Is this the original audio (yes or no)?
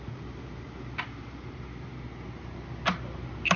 yes